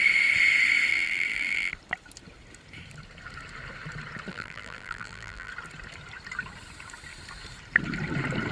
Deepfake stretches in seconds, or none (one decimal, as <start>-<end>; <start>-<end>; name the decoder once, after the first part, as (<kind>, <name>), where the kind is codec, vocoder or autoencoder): 0.9-1.7 (vocoder, BigVGAN v2); 4.3-5.5